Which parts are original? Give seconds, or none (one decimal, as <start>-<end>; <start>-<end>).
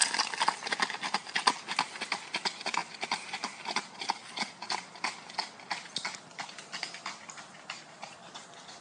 0.0-8.8